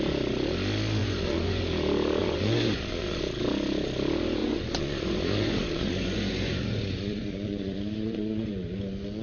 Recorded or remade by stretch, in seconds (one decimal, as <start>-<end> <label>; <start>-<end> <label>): 0.0-1.0 recorded; 1.0-1.6 remade; 1.6-2.2 recorded; 2.2-3.2 remade; 3.2-4.4 recorded; 4.4-8.5 remade; 8.5-9.2 recorded